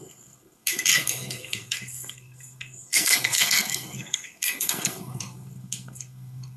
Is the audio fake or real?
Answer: fake